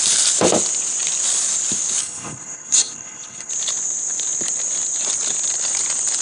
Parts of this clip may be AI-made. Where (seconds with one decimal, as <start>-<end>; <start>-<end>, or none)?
2.0-3.5